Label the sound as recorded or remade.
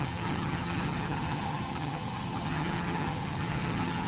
remade